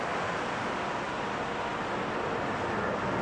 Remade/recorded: recorded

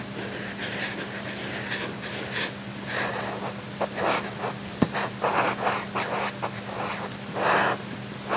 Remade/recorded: recorded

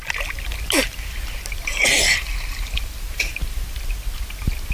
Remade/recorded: recorded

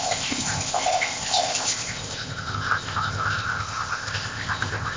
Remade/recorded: remade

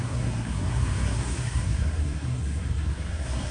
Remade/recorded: remade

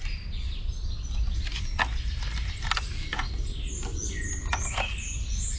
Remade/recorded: recorded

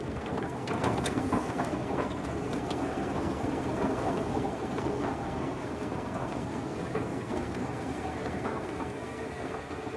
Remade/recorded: remade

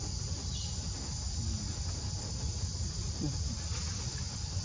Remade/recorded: recorded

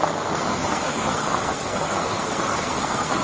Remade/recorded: remade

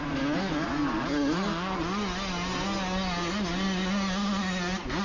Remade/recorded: recorded